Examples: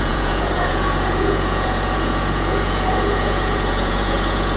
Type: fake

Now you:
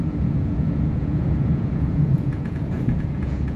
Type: fake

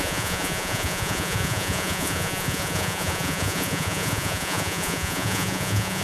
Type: fake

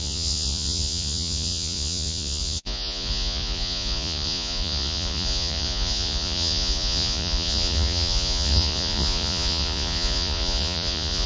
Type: fake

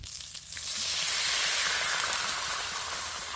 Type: real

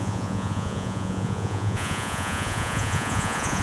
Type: fake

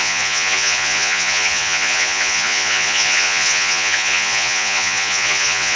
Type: fake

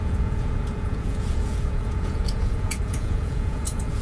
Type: fake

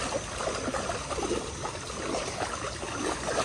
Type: real